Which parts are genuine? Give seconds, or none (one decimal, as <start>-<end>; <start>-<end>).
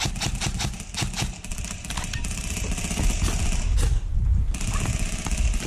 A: 0.0-1.5; 3.9-5.7